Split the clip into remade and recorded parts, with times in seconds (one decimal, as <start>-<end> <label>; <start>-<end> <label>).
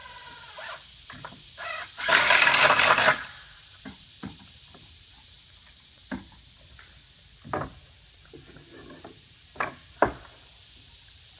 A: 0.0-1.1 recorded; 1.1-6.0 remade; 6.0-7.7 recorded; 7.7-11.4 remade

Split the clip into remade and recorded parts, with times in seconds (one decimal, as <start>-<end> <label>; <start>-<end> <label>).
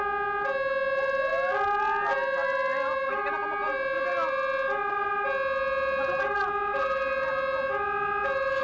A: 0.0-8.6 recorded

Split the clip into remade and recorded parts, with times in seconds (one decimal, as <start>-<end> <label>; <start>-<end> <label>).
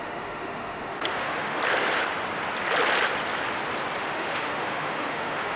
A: 0.0-1.6 remade; 1.6-4.0 recorded; 4.0-5.6 remade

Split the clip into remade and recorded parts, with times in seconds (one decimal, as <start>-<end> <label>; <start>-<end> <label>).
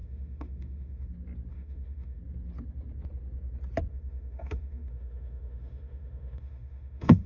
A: 0.0-1.1 remade; 1.1-1.5 recorded; 1.5-2.2 remade; 2.2-3.9 recorded; 3.9-7.3 remade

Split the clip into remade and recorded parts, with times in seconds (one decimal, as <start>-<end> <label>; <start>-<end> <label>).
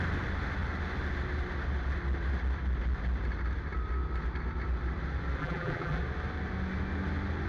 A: 0.0-5.4 recorded; 5.4-6.0 remade; 6.0-7.5 recorded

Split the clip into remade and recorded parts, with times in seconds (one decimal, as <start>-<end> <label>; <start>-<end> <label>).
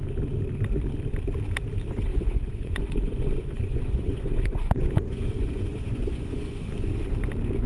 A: 0.0-2.1 recorded; 2.1-6.7 remade; 6.7-7.7 recorded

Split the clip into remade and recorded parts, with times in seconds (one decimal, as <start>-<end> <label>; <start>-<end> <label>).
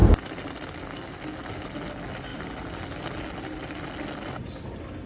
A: 0.0-5.1 recorded